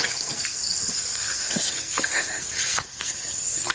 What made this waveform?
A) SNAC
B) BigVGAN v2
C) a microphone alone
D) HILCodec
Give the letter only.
A